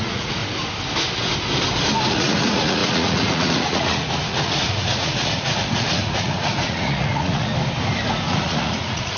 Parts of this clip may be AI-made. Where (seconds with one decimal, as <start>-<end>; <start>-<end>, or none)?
0.0-0.4; 2.1-7.5; 8.3-9.2